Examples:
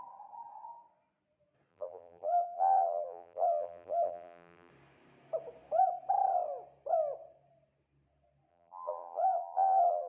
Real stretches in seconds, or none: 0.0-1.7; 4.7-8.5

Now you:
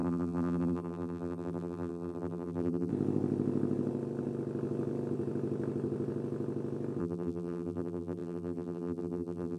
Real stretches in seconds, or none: 2.9-7.0

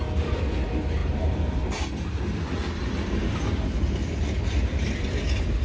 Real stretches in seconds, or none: 0.0-5.6

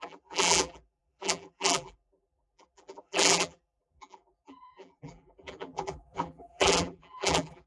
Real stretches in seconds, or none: none